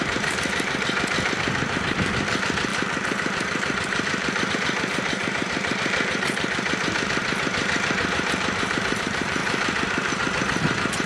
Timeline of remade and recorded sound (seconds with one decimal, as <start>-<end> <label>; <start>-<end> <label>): 0.0-7.2 remade; 7.2-8.0 recorded; 8.0-11.1 remade